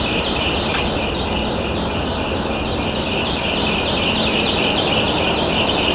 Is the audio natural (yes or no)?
yes